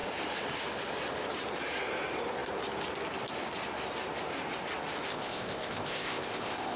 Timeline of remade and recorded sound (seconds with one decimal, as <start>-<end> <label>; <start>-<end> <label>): 0.0-5.1 recorded; 5.1-6.8 remade